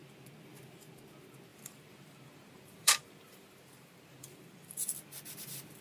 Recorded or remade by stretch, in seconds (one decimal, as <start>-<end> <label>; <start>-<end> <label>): 0.0-1.5 recorded; 1.5-4.9 remade; 4.9-5.8 recorded